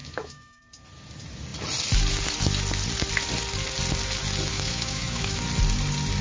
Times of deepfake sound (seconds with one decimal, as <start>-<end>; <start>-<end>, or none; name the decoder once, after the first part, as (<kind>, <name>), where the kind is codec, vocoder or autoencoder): 0.0-0.6 (autoencoder, DAC-VAE); 4.5-5.4